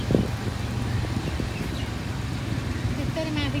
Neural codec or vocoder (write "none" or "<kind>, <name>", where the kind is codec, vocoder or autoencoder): none